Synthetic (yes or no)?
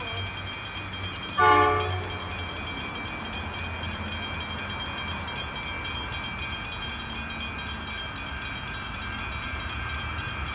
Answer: no